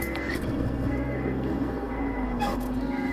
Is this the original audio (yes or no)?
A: no